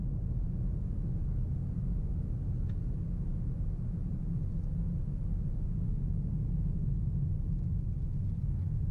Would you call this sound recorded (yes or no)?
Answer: yes